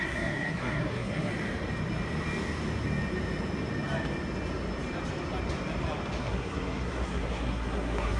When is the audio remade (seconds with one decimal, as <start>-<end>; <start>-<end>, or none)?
0.0-1.3; 6.2-8.2